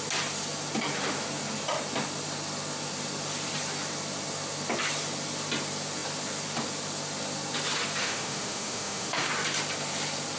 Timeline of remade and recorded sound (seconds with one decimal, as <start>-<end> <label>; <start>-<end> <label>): 0.0-8.0 recorded; 8.0-9.3 remade; 9.3-10.4 recorded